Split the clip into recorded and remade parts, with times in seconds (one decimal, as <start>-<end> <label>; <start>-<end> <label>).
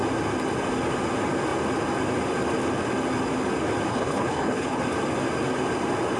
0.0-3.9 recorded; 3.9-4.8 remade; 4.8-6.2 recorded